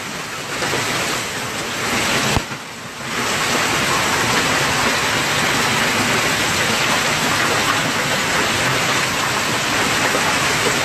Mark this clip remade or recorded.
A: recorded